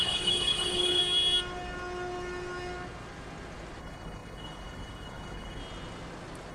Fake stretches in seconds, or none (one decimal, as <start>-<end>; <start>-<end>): 0.0-1.0; 3.8-5.6